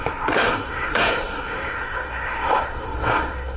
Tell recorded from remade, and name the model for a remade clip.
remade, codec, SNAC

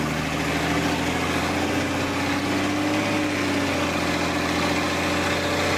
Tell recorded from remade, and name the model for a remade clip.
recorded